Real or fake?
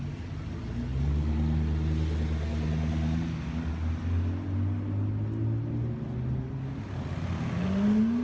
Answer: real